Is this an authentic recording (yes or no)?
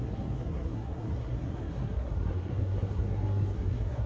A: no